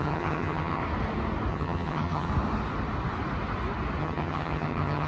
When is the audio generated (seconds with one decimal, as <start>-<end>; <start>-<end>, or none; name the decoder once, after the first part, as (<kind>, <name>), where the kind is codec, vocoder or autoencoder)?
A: 0.0-0.8 (vocoder, HiFi-GAN); 1.5-2.3; 4.0-5.1

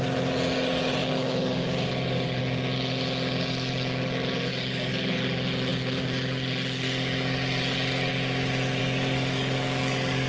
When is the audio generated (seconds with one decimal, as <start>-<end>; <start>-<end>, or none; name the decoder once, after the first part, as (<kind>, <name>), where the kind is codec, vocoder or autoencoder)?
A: 1.0-2.4 (codec, DAC); 4.5-5.2; 8.8-10.3